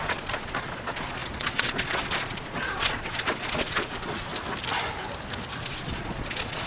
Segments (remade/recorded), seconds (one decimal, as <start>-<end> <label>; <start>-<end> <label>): 0.0-4.3 remade; 4.3-5.6 recorded; 5.6-6.7 remade